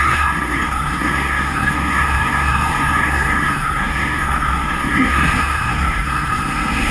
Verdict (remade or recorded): remade